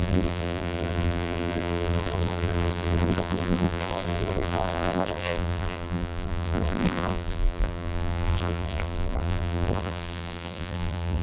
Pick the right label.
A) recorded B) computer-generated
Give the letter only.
B